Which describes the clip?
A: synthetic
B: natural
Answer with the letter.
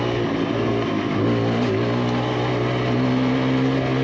B